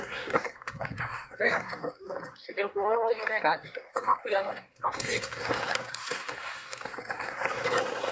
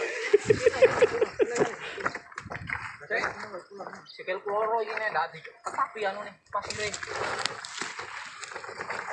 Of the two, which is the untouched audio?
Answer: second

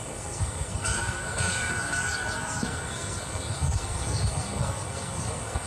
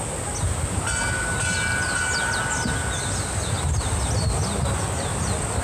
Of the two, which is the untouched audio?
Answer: second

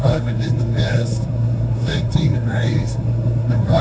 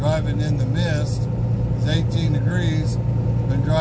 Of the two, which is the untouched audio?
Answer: second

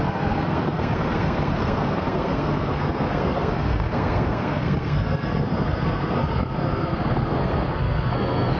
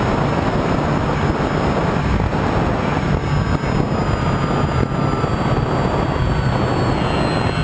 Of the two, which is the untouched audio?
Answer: second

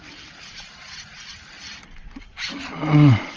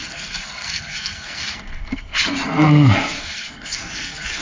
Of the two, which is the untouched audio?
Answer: first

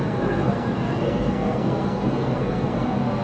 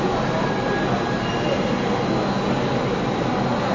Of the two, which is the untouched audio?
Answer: second